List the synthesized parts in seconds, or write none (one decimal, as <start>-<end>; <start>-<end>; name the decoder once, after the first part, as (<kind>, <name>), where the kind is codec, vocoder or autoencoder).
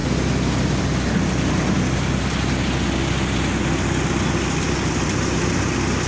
none